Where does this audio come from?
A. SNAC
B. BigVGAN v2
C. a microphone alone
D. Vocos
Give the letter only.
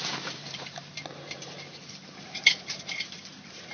B